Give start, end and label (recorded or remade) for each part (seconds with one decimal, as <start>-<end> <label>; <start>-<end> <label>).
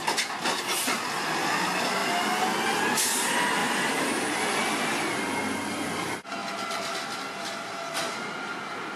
0.0-3.6 recorded; 3.6-5.2 remade; 5.2-9.0 recorded